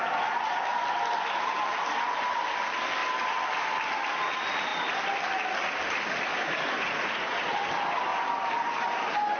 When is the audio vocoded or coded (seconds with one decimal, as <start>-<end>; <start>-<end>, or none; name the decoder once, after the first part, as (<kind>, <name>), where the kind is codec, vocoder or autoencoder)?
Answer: 6.3-7.6 (vocoder, Vocos)